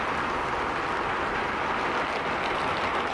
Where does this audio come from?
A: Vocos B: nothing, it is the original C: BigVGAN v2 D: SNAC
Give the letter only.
B